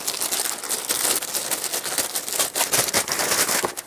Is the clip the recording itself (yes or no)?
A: yes